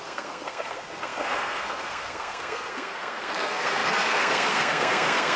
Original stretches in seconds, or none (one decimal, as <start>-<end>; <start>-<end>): none